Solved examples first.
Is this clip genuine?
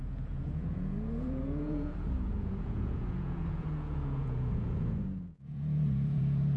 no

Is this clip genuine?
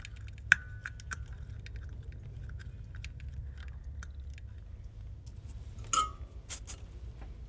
yes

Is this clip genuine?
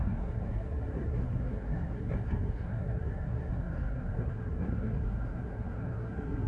no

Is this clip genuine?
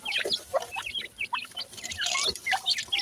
yes